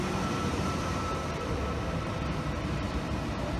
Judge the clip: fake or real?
fake